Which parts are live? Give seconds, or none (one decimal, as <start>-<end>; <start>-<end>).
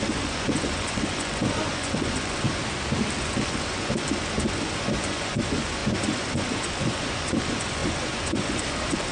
2.6-3.2